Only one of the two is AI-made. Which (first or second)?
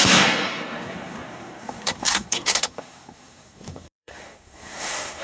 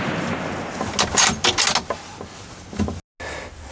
first